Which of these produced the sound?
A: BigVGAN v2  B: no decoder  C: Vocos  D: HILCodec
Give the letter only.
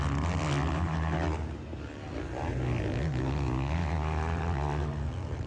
B